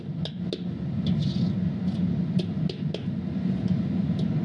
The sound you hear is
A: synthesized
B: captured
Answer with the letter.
B